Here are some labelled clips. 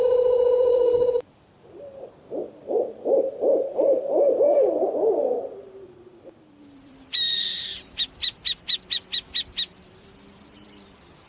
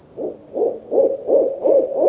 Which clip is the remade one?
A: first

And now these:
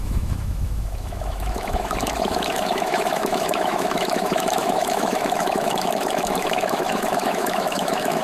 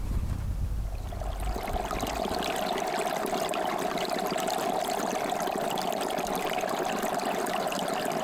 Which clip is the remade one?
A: first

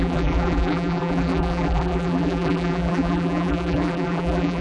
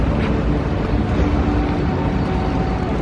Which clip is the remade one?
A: first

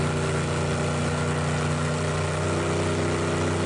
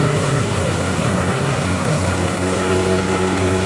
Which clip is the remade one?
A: second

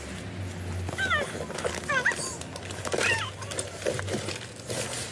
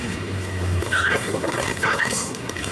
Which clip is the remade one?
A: second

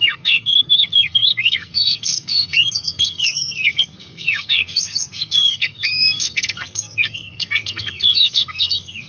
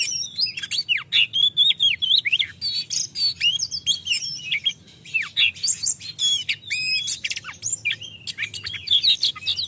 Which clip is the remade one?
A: first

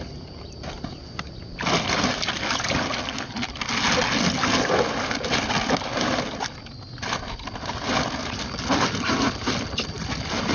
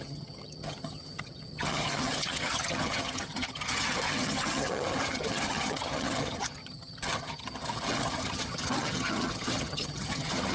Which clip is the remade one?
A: second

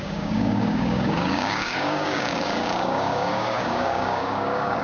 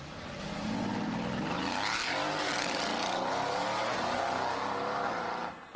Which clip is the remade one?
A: first